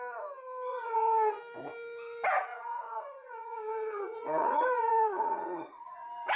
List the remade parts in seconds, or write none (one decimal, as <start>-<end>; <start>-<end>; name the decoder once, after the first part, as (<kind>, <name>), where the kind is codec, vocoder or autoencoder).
0.7-1.3 (vocoder, Vocos); 2.5-5.8